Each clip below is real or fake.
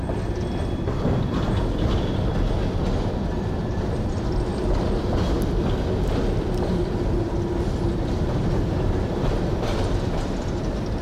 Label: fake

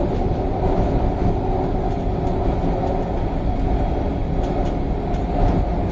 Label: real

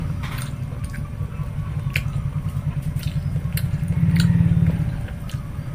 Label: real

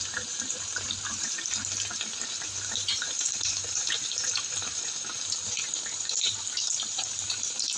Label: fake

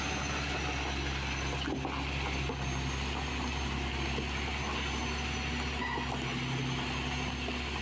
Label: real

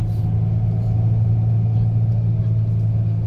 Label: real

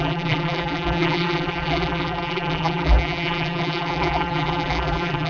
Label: fake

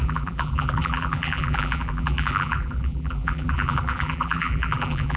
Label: fake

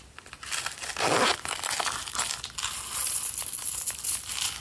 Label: real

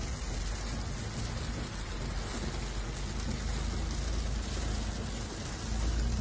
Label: real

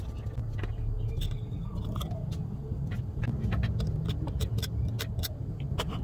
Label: real